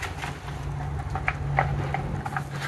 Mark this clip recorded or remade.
recorded